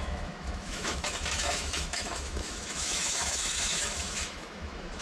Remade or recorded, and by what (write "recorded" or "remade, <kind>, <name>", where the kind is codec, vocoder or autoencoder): remade, autoencoder, DAC-VAE